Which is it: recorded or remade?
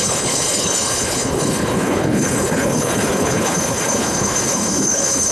remade